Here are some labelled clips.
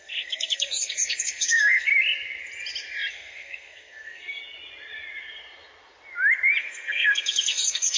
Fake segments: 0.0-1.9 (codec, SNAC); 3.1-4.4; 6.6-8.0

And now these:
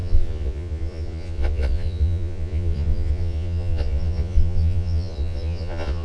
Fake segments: 0.0-6.0 (vocoder, Vocos)

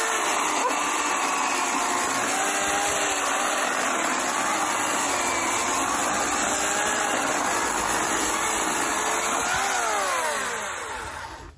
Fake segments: none